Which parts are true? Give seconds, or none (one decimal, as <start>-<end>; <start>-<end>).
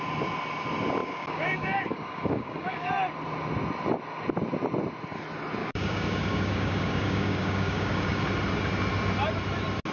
0.0-1.0; 2.9-5.6; 8.2-9.9